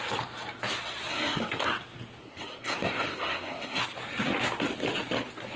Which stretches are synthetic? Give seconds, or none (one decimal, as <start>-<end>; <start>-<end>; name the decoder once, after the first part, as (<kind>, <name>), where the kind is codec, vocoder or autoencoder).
1.1-1.7 (codec, SNAC); 2.2-3.8